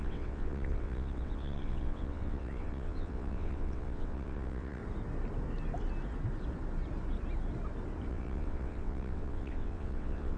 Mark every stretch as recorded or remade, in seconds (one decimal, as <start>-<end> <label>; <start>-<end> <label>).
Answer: 0.0-4.8 remade; 4.8-8.1 recorded; 8.1-10.4 remade